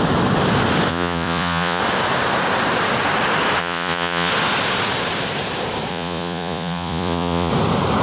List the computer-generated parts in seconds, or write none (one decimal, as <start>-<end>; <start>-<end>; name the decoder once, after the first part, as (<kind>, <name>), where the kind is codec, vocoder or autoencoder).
0.9-1.8 (vocoder, Vocos); 3.6-4.3; 5.9-7.5